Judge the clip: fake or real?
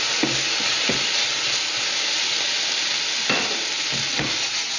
real